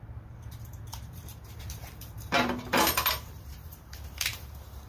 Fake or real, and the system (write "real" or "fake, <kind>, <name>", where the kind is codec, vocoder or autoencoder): fake, vocoder, BigVGAN v2